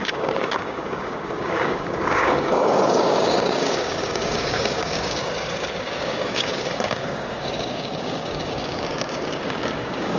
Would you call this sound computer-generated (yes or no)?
yes